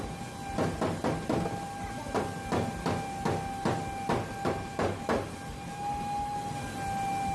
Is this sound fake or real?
real